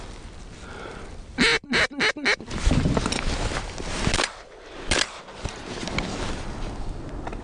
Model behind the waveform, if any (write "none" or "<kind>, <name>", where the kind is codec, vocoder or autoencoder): none